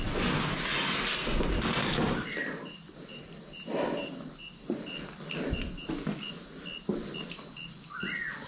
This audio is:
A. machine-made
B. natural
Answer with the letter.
B